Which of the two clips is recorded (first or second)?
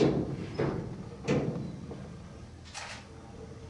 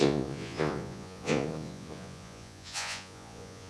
first